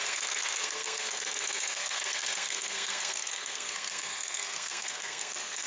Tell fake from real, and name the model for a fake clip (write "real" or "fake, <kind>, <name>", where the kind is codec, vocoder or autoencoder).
fake, codec, SNAC